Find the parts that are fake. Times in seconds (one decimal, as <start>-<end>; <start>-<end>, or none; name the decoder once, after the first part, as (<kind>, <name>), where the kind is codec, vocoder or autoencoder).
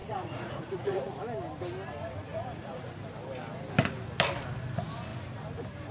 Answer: 0.0-1.2 (vocoder, Vocos); 2.3-2.8